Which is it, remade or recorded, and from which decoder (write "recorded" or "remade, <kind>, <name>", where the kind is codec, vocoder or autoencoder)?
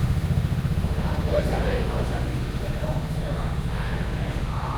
remade, autoencoder, DAC-VAE